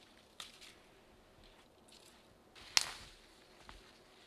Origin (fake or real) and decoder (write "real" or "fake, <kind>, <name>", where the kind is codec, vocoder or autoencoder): real